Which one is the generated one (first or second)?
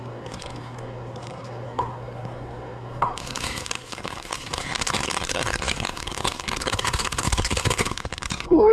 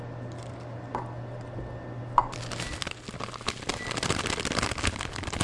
first